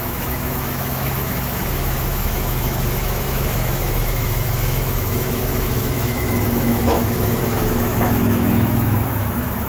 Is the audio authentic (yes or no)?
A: no